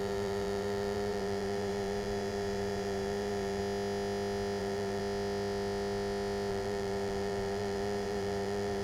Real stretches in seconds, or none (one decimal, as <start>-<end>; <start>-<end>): 3.6-4.6; 5.0-6.5